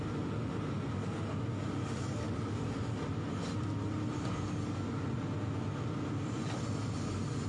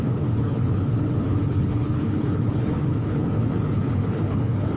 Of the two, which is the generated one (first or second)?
second